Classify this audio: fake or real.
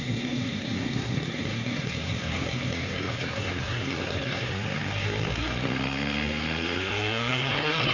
fake